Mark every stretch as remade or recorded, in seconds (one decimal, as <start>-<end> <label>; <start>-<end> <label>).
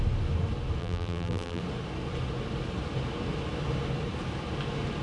0.0-0.8 recorded; 0.8-1.6 remade; 1.6-5.0 recorded